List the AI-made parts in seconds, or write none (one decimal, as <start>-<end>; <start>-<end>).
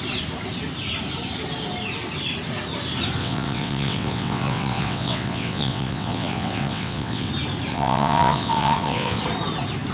3.2-7.3; 7.7-9.2